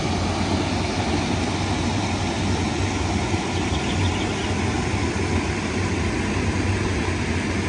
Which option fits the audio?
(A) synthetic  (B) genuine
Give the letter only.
B